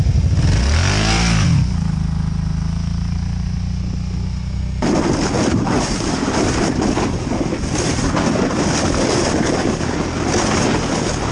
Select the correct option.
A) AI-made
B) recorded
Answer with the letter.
B